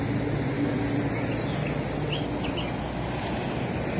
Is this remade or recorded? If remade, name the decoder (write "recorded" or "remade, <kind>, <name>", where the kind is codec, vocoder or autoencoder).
recorded